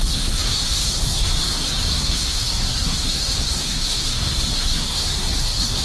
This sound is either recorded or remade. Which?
remade